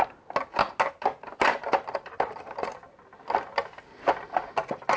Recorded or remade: recorded